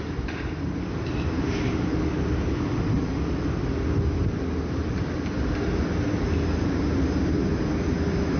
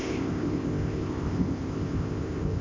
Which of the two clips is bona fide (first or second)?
first